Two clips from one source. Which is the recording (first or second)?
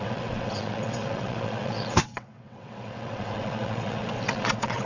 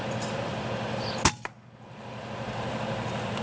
second